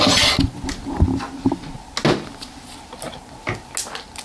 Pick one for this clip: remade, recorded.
recorded